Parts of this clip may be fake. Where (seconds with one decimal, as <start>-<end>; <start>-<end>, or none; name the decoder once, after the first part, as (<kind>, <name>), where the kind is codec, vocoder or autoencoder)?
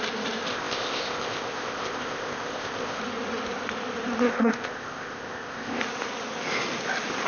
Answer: 0.5-3.0 (codec, ZipCodec); 4.3-5.8